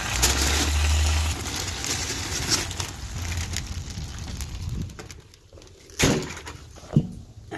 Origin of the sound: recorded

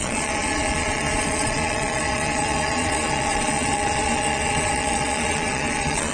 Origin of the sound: remade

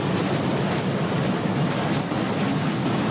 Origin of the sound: recorded